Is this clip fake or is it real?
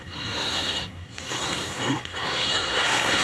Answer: fake